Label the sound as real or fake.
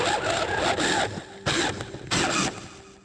real